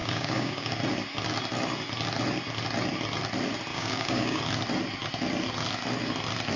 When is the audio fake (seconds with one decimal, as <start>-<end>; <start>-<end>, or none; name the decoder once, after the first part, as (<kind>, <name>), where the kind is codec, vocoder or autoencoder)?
0.0-0.7 (codec, DAC); 3.7-4.4